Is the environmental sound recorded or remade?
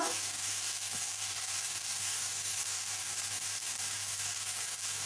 remade